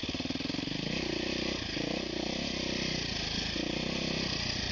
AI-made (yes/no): no